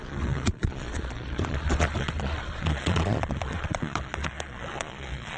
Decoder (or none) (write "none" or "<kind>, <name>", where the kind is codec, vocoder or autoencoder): vocoder, Vocos